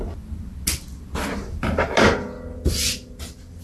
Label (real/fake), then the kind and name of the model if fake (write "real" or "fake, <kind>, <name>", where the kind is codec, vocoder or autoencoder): real